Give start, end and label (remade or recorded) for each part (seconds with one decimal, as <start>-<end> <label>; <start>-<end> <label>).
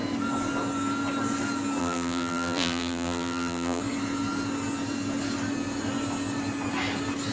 0.0-1.8 recorded; 1.8-3.8 remade; 3.8-7.3 recorded